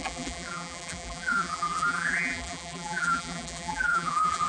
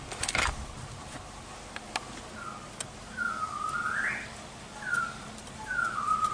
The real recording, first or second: second